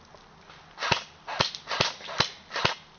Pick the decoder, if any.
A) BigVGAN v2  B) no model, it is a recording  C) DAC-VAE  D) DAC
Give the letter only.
B